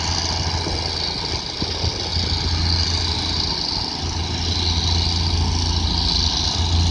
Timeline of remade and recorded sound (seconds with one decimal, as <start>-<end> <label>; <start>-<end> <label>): 0.0-6.9 recorded